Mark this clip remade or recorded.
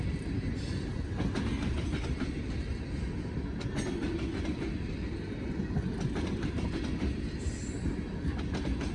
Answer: recorded